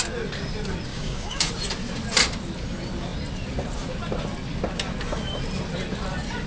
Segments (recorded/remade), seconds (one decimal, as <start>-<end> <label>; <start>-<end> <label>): 0.0-0.9 recorded; 0.9-1.5 remade; 1.5-6.5 recorded